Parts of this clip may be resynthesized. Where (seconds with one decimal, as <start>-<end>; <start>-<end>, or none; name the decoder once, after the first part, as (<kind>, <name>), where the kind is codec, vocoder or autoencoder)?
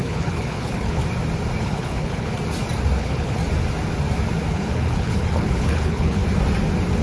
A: 0.0-1.0 (codec, HILCodec); 1.6-2.3; 3.0-3.4; 4.5-6.2